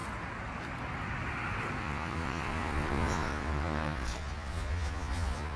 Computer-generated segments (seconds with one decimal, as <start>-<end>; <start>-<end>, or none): 1.8-5.6